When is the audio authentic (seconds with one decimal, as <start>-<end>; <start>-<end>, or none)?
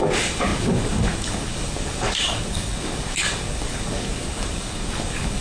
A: none